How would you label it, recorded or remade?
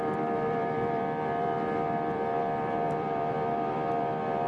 remade